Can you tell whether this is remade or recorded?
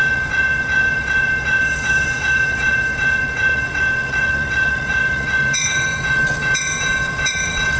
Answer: remade